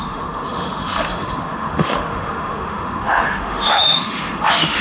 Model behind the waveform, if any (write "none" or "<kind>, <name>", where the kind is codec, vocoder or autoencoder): autoencoder, DAC-VAE